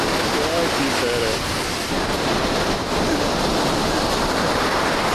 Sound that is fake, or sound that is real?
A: real